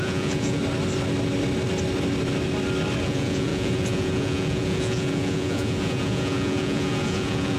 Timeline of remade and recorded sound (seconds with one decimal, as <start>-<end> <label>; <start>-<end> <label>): 0.0-0.6 remade; 0.6-3.0 recorded; 3.0-7.6 remade